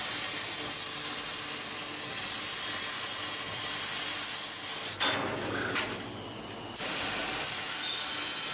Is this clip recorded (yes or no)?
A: yes